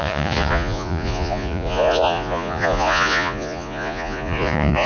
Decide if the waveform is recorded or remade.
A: remade